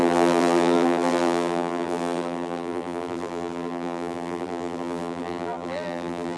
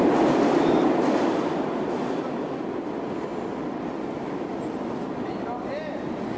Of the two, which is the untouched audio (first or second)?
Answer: second